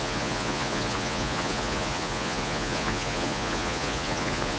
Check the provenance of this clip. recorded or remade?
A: remade